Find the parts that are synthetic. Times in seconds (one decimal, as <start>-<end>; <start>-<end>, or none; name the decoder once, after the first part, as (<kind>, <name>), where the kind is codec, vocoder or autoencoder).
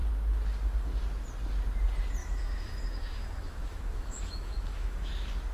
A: 2.2-5.1 (autoencoder, DAC-VAE)